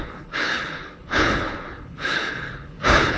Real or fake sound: fake